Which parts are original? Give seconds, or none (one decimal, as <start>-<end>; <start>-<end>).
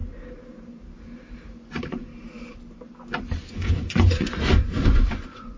0.0-1.5; 2.1-3.5